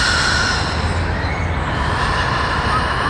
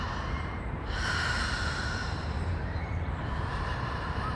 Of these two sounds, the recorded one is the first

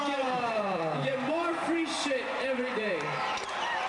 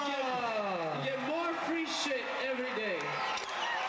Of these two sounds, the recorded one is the second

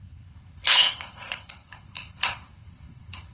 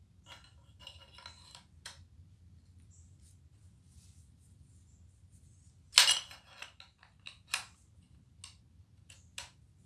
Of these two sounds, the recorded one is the second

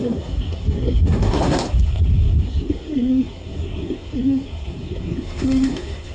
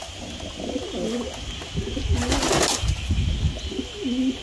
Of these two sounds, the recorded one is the second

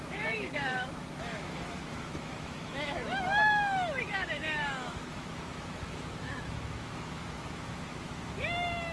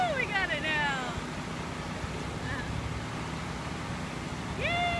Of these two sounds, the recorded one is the second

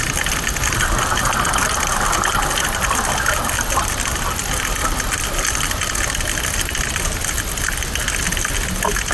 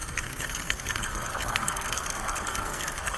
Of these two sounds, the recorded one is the first